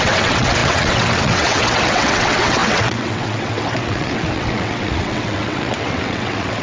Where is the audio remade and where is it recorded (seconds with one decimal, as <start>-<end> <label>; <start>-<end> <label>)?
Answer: 0.0-6.6 remade